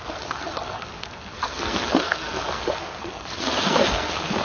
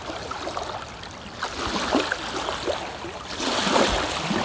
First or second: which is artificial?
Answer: first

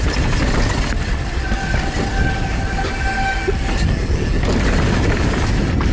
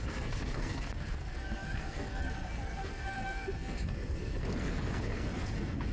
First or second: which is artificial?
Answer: second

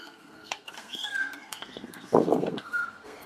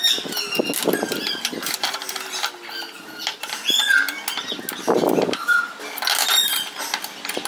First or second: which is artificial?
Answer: first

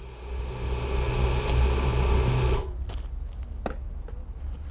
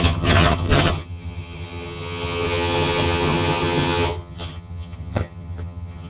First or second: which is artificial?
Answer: second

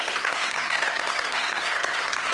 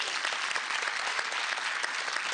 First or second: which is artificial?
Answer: first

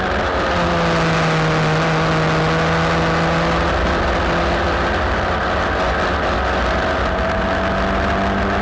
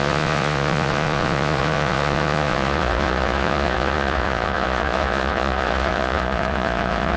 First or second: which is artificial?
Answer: second